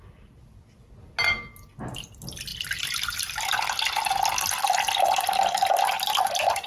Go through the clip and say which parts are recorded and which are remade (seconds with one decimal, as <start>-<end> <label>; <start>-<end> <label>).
0.0-6.7 recorded